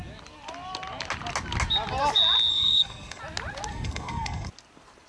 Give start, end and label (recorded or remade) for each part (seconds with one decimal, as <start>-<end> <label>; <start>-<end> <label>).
0.0-2.5 recorded; 2.5-3.2 remade; 3.2-3.7 recorded; 3.7-4.5 remade; 4.5-5.1 recorded